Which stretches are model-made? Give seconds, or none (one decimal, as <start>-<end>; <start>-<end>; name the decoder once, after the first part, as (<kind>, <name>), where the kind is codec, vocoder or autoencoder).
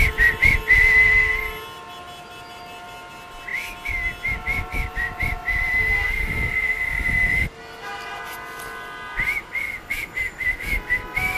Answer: none